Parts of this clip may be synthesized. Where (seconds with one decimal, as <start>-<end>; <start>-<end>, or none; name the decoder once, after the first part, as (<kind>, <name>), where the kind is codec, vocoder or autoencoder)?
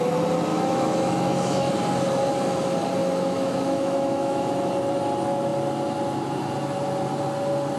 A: 0.5-1.7 (autoencoder, DAC-VAE); 3.0-4.5